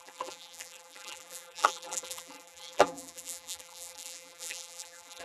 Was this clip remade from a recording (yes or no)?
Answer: yes